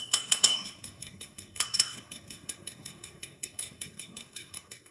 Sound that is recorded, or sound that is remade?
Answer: remade